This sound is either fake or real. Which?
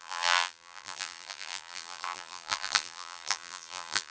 fake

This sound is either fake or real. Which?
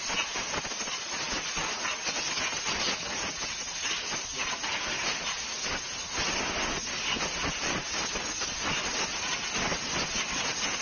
real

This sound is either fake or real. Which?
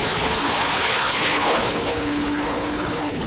fake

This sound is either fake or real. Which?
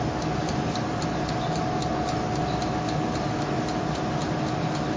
real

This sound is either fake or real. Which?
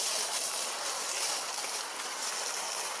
real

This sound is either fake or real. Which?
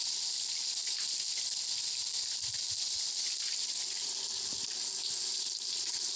real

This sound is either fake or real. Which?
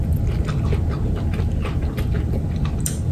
real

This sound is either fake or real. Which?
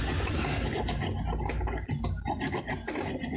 real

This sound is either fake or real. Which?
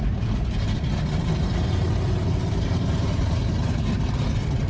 fake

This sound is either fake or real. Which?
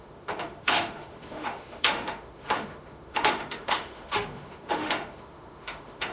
fake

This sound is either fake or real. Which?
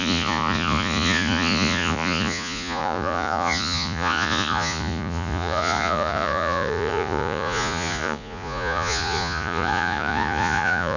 fake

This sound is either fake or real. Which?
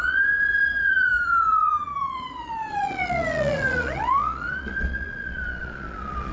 fake